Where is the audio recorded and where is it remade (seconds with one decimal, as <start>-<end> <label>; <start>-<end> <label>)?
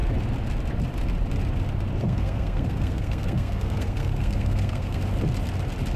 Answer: 0.0-2.0 recorded; 2.0-5.0 remade; 5.0-6.0 recorded